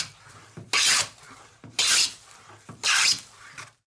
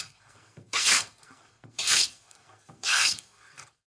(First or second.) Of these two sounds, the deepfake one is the second